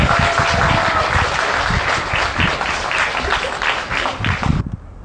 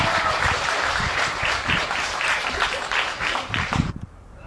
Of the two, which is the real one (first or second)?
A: first